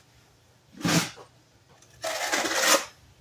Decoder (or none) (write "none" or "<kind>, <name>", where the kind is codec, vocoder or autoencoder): none